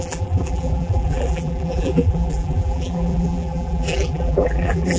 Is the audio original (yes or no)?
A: no